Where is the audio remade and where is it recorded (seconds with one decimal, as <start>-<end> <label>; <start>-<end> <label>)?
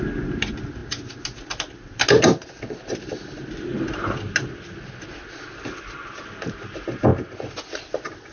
0.0-8.3 recorded